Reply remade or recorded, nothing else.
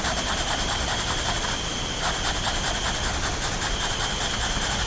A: recorded